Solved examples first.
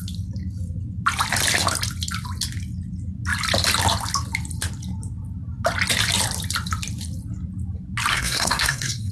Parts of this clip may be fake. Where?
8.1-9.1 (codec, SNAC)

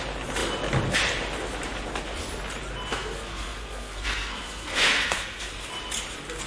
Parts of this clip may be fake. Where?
2.9-5.7 (codec, SNAC)

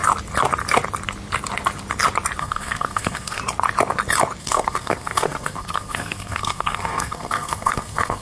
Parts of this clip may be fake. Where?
2.4-3.4 (codec, SNAC); 4.4-8.2

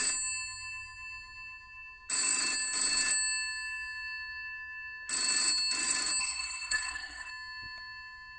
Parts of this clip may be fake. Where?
6.2-7.3 (codec, SNAC)